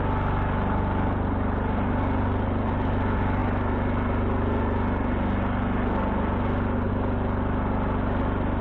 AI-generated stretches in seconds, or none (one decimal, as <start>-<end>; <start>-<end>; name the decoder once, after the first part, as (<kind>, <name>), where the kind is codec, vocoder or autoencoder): none